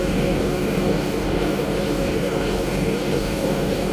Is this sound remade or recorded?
remade